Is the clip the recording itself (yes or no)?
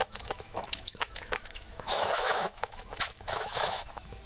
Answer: no